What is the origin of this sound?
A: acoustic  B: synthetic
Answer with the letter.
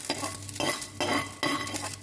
A